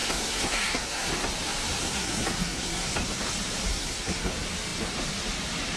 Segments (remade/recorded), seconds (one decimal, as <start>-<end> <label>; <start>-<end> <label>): 0.0-1.1 remade; 1.1-1.8 recorded; 1.8-2.9 remade; 2.9-3.7 recorded; 3.7-4.3 remade; 4.3-5.8 recorded